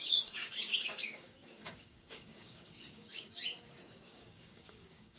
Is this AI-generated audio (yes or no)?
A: yes